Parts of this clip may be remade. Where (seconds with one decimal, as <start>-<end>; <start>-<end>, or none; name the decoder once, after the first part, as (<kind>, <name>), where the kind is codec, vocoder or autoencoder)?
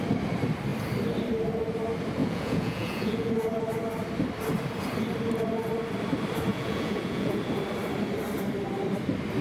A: 2.2-3.3 (vocoder, Vocos); 6.5-7.4